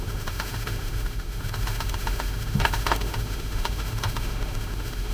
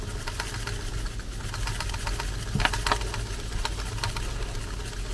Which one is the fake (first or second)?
first